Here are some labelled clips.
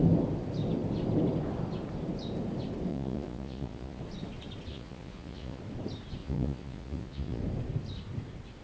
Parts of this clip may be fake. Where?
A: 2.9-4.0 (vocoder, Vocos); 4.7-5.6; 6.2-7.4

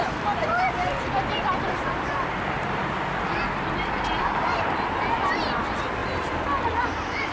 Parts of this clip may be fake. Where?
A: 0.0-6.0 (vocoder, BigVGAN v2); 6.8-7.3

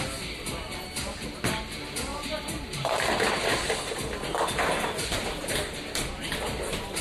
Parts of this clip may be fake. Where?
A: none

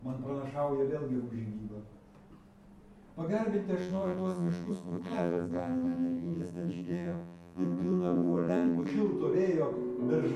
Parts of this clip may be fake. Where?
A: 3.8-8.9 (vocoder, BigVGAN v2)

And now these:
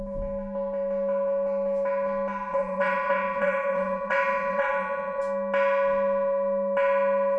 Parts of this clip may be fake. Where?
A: 2.5-5.2 (vocoder, WaveNeXt)

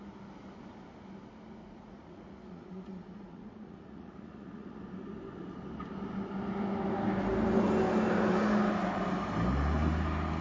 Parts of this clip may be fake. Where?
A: 1.6-4.8 (vocoder, Vocos)